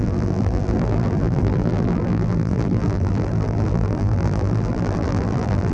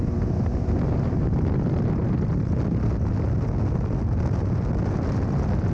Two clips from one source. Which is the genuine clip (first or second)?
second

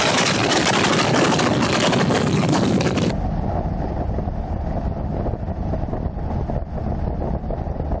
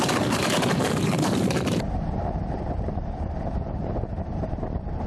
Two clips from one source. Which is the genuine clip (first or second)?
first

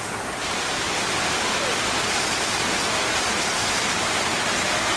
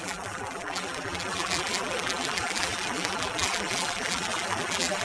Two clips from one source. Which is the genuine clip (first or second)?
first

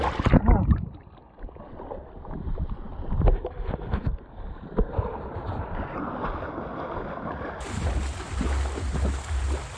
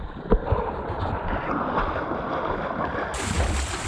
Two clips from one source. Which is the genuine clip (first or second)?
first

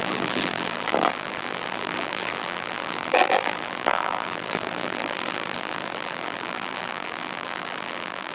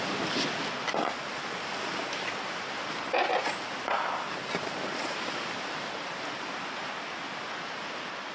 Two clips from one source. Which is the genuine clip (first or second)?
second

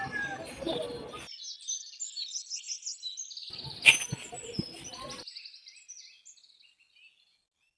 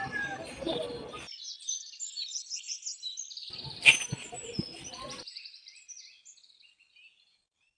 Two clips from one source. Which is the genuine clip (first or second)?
first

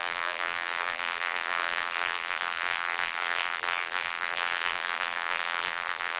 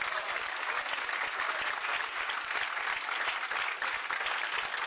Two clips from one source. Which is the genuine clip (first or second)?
second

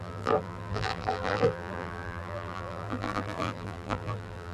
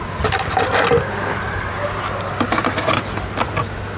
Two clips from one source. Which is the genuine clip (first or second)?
second